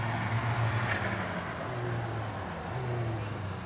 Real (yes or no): yes